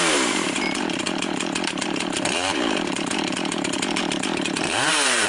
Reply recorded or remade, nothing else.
remade